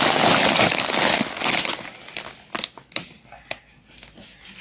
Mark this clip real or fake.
real